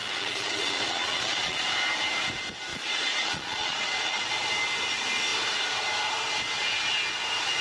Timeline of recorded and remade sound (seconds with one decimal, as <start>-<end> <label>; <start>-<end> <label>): 0.0-1.6 remade; 1.6-2.7 recorded; 2.7-4.3 remade; 4.3-7.6 recorded